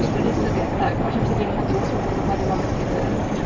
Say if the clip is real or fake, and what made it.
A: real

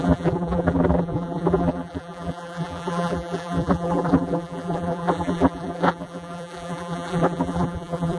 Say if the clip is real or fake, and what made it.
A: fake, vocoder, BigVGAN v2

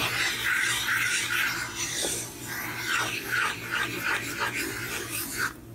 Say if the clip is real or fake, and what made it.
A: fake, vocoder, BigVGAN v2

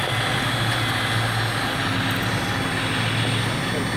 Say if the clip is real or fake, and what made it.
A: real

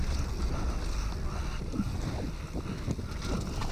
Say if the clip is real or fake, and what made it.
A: real